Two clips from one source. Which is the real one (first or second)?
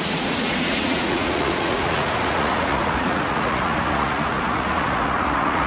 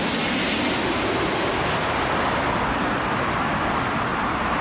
second